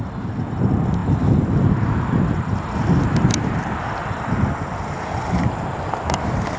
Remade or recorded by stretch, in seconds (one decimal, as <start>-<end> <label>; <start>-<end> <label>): 0.0-6.6 recorded